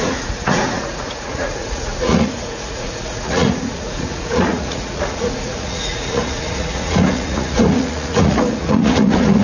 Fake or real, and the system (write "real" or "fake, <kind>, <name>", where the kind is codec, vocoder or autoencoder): fake, vocoder, Vocos